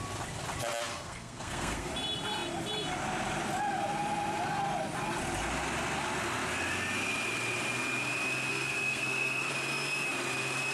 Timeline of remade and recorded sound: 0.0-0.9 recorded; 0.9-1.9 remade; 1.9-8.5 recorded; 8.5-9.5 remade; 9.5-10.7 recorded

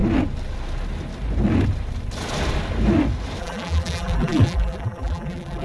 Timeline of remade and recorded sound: 0.0-3.4 recorded; 3.4-5.6 remade

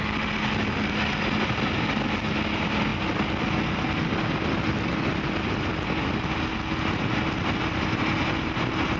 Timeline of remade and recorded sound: 0.0-9.0 recorded

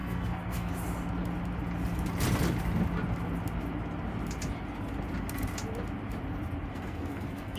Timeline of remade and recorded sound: 0.0-0.7 remade; 0.7-6.7 recorded; 6.7-7.6 remade

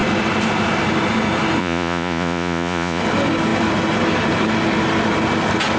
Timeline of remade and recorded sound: 0.0-1.6 recorded; 1.6-3.0 remade; 3.0-5.8 recorded

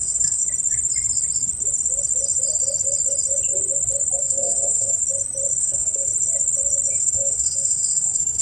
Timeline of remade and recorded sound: 0.0-0.4 remade; 0.4-4.2 recorded; 4.2-5.0 remade; 5.0-5.6 recorded; 5.6-6.1 remade; 6.1-6.9 recorded; 6.9-8.4 remade

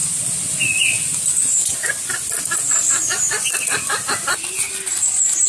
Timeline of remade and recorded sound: 0.0-5.5 recorded

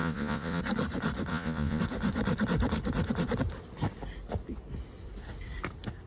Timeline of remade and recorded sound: 0.0-0.6 remade; 0.6-1.3 recorded; 1.3-1.8 remade; 1.8-6.1 recorded